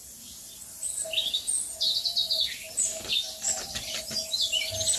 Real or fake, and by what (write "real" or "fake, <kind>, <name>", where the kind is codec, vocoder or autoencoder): real